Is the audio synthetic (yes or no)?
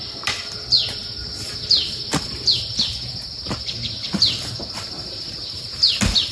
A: no